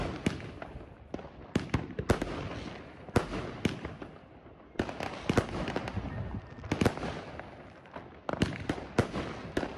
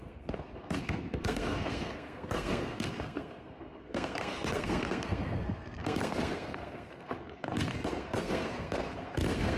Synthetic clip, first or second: second